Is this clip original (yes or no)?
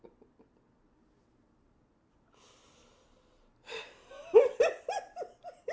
yes